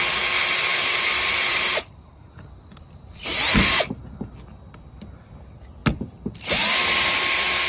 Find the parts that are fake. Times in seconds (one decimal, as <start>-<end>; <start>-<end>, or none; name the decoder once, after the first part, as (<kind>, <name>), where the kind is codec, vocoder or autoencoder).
0.7-4.6 (vocoder, BigVGAN v2)